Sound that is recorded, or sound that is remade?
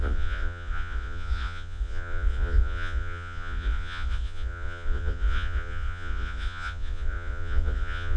remade